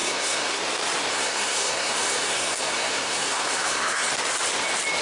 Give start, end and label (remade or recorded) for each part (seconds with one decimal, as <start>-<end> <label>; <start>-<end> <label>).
0.0-0.6 remade; 0.6-1.1 recorded; 1.1-4.1 remade; 4.1-5.0 recorded